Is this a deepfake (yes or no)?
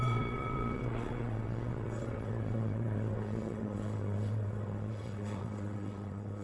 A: yes